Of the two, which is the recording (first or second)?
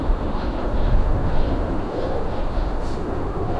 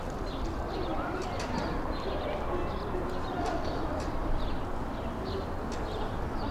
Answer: second